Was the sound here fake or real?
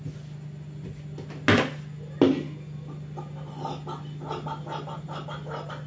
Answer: real